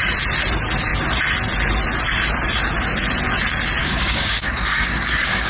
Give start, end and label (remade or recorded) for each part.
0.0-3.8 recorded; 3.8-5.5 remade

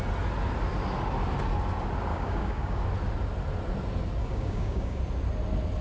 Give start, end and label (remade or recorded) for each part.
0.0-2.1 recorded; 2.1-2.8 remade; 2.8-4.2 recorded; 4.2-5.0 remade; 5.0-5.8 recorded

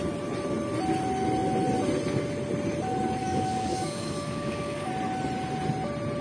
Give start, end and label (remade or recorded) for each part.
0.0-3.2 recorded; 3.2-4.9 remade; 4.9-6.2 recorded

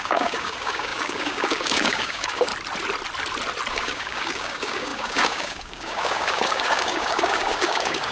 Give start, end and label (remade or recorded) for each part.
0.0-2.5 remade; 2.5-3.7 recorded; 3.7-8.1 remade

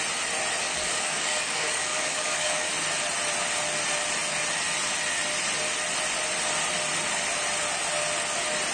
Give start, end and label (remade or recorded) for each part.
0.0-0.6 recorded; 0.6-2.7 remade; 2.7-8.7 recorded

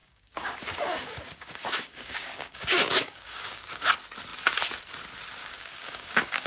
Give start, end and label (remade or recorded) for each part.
0.0-3.9 remade; 3.9-5.4 recorded; 5.4-6.5 remade

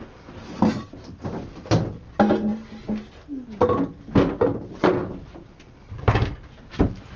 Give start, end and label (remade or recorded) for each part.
0.0-7.2 recorded